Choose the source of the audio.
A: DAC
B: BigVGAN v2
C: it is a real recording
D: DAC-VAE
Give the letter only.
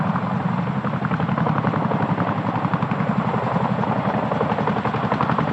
C